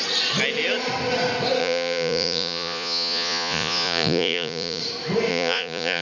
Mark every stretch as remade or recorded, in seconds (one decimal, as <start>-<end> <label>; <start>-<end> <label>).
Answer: 0.0-1.6 recorded; 1.6-4.8 remade; 4.8-5.3 recorded; 5.3-6.0 remade